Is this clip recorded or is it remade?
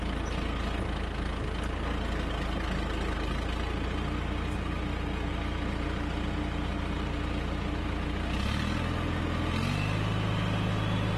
recorded